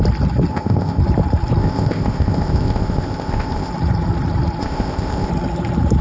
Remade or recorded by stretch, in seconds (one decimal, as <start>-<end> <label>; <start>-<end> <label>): 0.0-0.5 recorded; 0.5-1.0 remade; 1.0-1.6 recorded; 1.6-3.7 remade; 3.7-4.6 recorded; 4.6-5.3 remade; 5.3-6.0 recorded